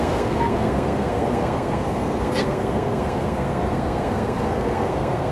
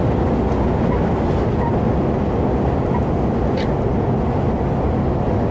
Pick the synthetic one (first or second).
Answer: first